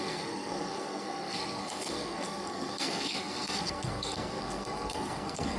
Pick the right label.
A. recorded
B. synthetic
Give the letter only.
B